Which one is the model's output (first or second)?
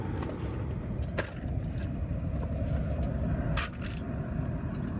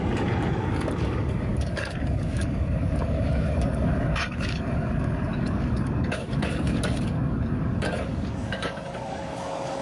second